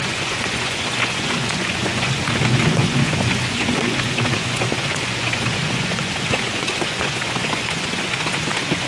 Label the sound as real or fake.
fake